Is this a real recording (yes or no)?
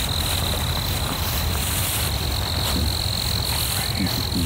yes